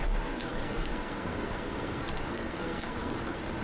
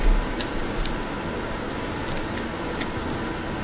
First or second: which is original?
second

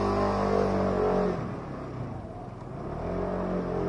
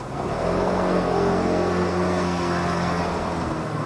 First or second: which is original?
first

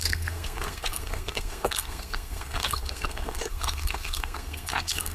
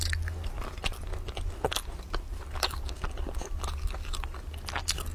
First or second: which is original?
second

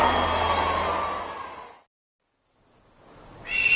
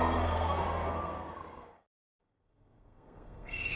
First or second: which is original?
first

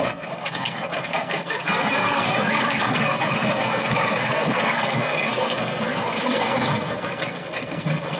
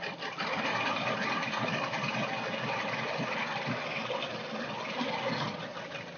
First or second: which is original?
second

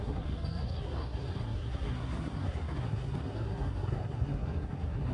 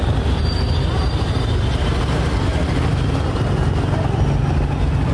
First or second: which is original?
second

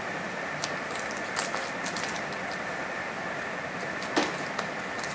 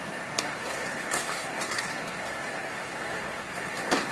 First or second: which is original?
first